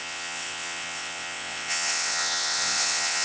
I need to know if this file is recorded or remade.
remade